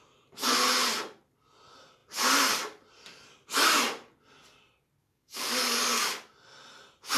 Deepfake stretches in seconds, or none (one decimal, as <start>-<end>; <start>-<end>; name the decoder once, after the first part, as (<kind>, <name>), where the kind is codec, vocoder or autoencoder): 5.0-6.0 (codec, DAC)